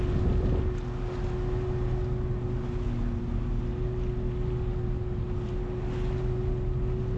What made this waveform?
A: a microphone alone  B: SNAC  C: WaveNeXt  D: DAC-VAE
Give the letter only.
A